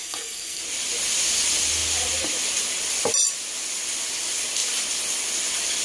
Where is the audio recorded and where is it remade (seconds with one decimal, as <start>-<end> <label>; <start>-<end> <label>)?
0.0-0.6 remade; 0.6-5.8 recorded